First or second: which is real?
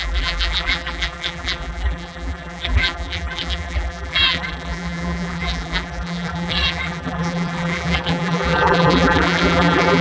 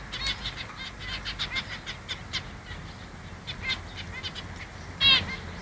second